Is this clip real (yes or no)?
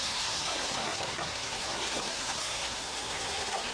no